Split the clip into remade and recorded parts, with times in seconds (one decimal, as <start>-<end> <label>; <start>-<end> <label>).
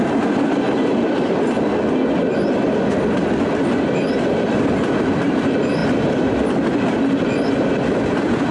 0.0-8.5 recorded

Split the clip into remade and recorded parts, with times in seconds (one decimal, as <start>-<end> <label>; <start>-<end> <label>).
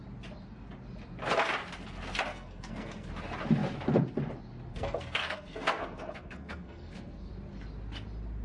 0.0-2.3 recorded; 2.3-3.1 remade; 3.1-4.7 recorded; 4.7-7.3 remade; 7.3-8.4 recorded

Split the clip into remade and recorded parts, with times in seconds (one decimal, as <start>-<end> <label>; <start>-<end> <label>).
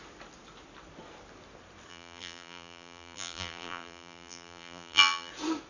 0.0-1.9 recorded; 1.9-5.3 remade; 5.3-5.7 recorded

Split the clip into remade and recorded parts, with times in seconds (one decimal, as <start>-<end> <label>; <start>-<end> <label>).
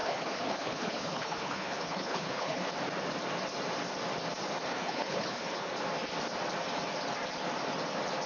0.0-2.7 remade; 2.7-4.7 recorded; 4.7-5.7 remade; 5.7-8.3 recorded